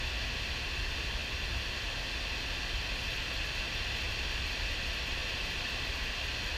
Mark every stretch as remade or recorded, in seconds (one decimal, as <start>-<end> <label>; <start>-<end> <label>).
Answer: 0.0-5.2 recorded; 5.2-5.9 remade; 5.9-6.6 recorded